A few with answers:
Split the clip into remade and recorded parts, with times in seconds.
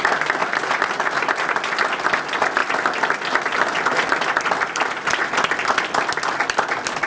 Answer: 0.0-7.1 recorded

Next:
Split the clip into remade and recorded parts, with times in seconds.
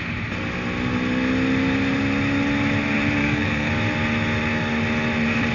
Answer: 0.0-3.2 recorded; 3.2-3.7 remade; 3.7-5.5 recorded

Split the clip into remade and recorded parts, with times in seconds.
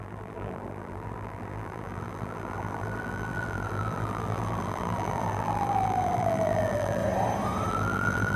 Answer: 0.0-7.0 remade; 7.0-7.7 recorded; 7.7-8.4 remade